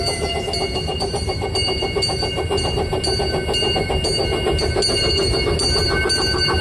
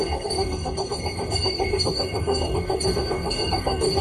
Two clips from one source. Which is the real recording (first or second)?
first